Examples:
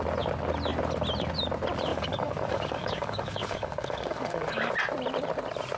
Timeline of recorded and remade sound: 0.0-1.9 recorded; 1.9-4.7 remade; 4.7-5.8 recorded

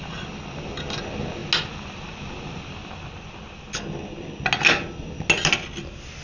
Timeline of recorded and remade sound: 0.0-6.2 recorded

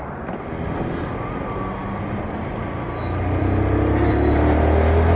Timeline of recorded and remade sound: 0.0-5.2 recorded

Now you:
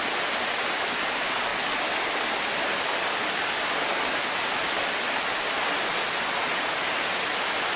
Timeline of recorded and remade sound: 0.0-7.8 recorded